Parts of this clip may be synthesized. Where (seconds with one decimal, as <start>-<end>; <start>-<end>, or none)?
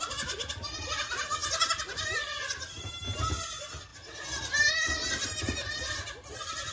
5.6-6.7